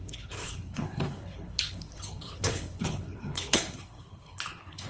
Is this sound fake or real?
fake